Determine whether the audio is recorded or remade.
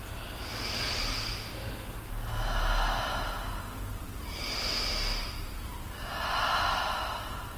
recorded